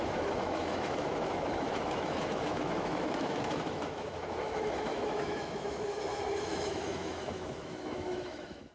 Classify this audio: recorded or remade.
remade